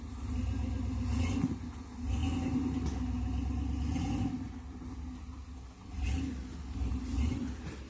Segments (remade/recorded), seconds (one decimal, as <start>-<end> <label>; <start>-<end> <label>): 0.0-7.9 recorded